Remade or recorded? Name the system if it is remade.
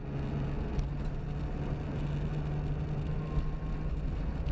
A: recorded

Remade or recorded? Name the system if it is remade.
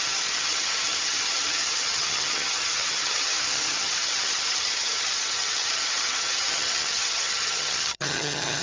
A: remade, vocoder, HiFi-GAN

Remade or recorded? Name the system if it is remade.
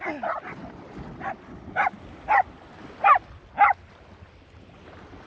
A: recorded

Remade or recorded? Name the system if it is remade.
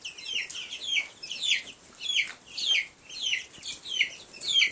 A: recorded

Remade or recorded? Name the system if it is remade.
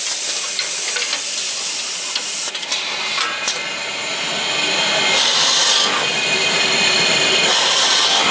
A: recorded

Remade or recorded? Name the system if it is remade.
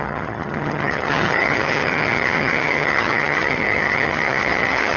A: remade, vocoder, HiFi-GAN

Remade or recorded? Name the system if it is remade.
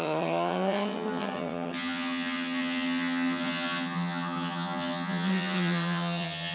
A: remade, vocoder, HiFi-GAN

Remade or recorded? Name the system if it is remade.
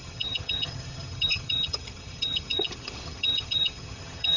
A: remade, vocoder, HiFi-GAN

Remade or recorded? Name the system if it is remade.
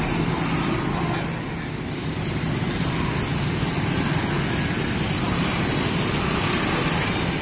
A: recorded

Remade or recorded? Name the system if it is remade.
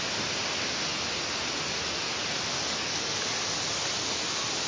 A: recorded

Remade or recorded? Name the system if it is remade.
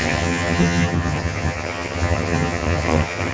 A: remade, vocoder, HiFi-GAN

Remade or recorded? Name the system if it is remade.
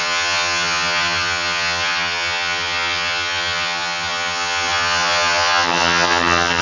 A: remade, vocoder, HiFi-GAN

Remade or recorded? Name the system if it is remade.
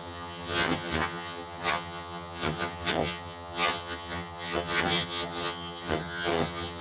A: remade, vocoder, HiFi-GAN